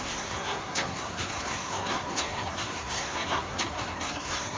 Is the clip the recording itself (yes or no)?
no